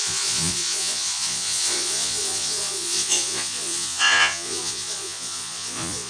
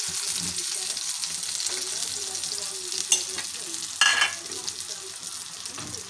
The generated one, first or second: first